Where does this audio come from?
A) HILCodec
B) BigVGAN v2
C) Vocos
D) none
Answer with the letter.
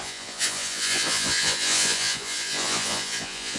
C